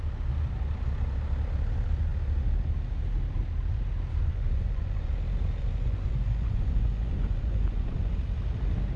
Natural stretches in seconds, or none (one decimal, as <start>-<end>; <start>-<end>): 0.0-4.2; 5.1-5.6; 8.1-9.0